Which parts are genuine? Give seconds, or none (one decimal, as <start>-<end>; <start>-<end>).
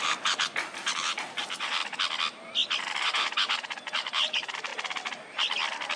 1.8-3.0; 4.7-6.0